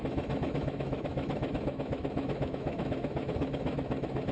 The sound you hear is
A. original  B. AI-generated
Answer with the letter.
B